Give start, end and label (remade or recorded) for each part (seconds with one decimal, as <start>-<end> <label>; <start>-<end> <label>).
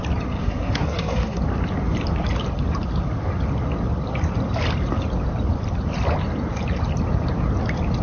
0.0-0.4 recorded; 0.4-1.4 remade; 1.4-8.0 recorded